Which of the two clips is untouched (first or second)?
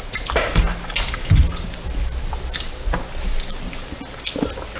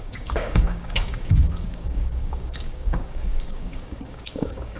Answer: first